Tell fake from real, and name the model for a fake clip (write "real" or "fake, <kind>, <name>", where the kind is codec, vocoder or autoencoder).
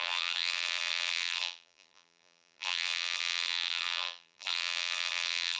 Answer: fake, vocoder, BigVGAN v2